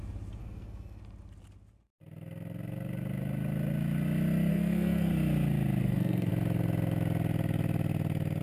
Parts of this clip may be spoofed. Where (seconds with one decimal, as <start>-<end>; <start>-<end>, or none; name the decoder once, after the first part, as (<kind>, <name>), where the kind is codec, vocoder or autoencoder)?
0.4-1.0 (codec, SNAC); 4.5-5.1; 5.8-6.3